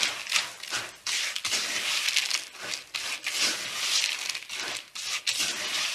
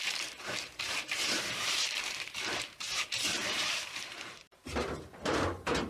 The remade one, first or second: second